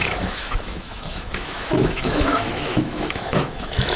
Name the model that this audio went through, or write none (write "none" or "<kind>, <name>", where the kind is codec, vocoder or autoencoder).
autoencoder, DAC-VAE